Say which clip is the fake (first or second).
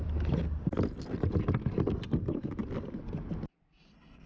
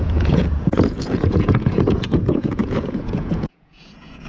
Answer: second